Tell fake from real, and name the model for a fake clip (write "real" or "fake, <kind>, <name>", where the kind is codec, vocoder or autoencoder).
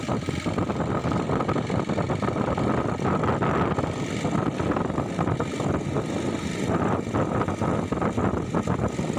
real